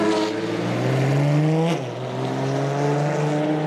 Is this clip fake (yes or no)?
no